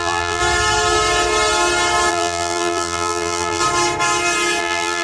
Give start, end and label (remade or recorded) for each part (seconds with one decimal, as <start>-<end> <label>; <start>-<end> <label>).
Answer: 0.0-0.4 remade; 0.4-2.1 recorded; 2.1-3.6 remade; 3.6-4.6 recorded; 4.6-5.0 remade